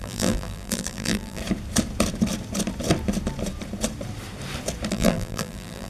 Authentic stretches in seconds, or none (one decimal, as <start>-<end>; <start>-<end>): 1.4-4.9